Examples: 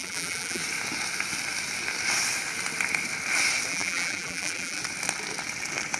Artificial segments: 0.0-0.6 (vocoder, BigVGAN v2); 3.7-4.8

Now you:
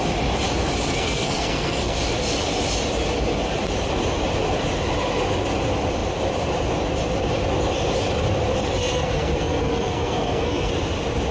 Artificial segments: 0.9-2.0 (codec, SNAC); 8.8-10.7